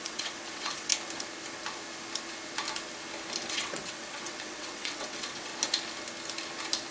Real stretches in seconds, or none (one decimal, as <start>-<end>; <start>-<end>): 0.9-3.5; 5.5-6.9